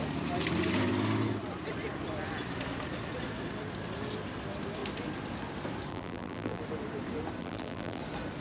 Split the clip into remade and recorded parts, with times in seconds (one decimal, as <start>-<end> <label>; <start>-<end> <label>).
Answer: 0.0-5.9 recorded; 5.9-6.6 remade; 6.6-7.4 recorded; 7.4-8.0 remade; 8.0-8.4 recorded